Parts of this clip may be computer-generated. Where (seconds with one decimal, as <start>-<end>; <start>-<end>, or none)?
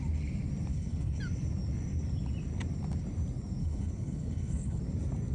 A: 0.7-1.2; 3.6-4.8